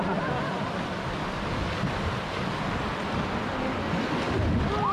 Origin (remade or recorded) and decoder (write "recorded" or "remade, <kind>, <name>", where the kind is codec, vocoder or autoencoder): recorded